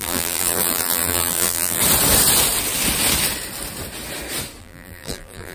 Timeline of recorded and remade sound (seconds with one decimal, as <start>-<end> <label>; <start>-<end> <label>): 0.0-1.8 remade; 1.8-4.6 recorded; 4.6-5.5 remade